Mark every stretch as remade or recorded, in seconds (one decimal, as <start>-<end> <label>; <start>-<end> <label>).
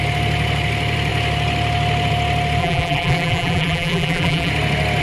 0.0-2.6 recorded; 2.6-4.5 remade; 4.5-5.0 recorded